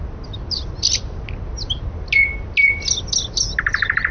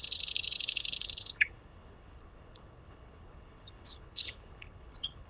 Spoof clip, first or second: second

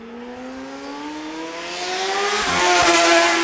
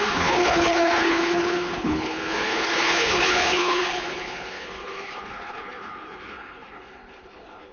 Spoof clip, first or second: second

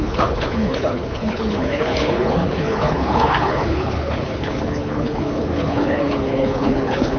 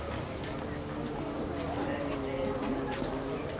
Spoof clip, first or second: first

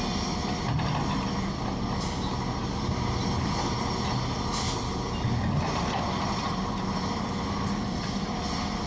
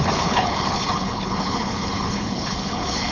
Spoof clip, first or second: second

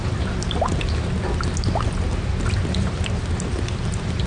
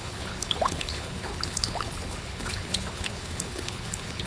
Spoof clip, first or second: second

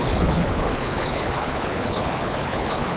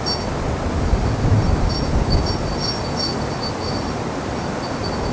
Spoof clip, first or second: first